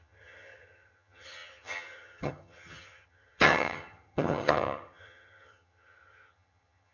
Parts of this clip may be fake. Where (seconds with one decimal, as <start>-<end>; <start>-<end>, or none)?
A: 0.0-6.9